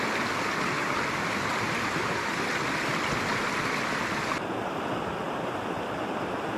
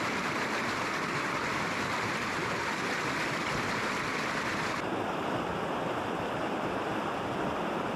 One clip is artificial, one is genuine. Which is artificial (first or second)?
second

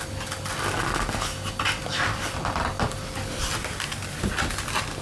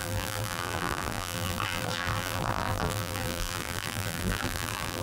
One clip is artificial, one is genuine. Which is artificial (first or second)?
second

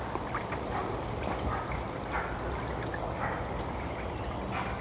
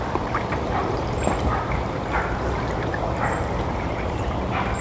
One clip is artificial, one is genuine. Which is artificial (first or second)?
second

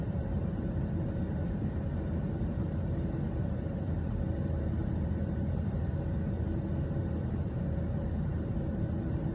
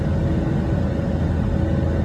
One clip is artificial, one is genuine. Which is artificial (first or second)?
first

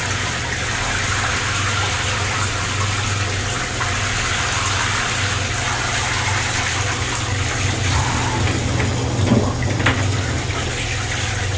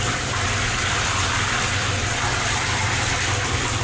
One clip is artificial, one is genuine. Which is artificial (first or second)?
second